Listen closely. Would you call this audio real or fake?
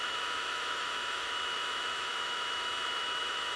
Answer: fake